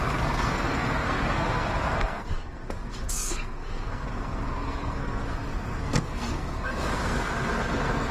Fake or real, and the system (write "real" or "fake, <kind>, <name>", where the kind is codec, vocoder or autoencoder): fake, codec, SNAC